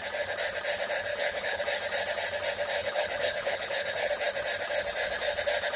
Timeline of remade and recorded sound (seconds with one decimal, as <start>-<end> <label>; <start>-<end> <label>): 0.0-1.1 recorded; 1.1-1.6 remade; 1.6-2.8 recorded; 2.8-4.1 remade; 4.1-5.8 recorded